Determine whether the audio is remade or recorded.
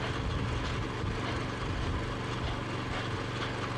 recorded